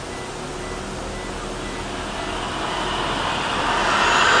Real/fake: real